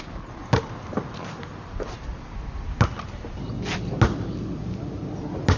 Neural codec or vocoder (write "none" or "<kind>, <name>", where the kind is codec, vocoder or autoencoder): none